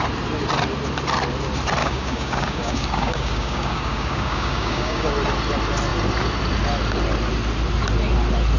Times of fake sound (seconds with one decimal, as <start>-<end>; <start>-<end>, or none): 1.8-5.1